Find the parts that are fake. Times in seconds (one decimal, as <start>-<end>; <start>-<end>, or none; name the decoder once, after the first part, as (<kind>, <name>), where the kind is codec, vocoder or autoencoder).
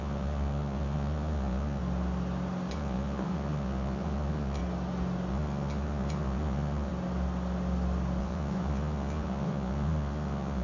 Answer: 0.0-1.8 (vocoder, Vocos); 2.7-4.6; 5.3-6.9; 8.2-10.6